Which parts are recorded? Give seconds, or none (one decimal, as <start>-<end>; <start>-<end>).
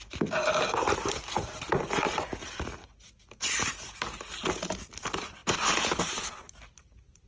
0.0-7.3